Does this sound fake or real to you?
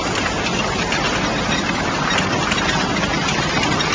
real